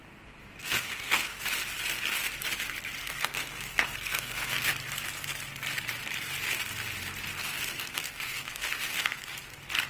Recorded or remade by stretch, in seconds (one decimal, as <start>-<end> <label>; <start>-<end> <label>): 0.0-0.6 recorded; 0.6-1.4 remade; 1.4-3.0 recorded; 3.0-4.7 remade; 4.7-7.3 recorded; 7.3-9.2 remade; 9.2-9.9 recorded